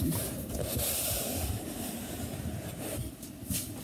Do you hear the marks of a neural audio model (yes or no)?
yes